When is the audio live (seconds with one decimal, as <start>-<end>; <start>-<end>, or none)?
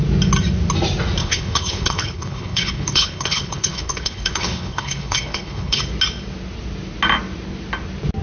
0.0-1.2; 5.8-8.2